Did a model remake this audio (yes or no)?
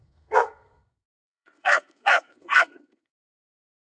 yes